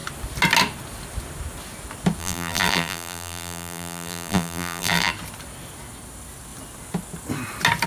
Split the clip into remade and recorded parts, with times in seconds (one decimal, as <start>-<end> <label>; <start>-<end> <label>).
0.0-2.2 recorded; 2.2-5.1 remade; 5.1-7.9 recorded